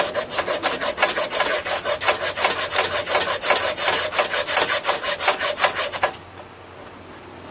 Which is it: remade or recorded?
recorded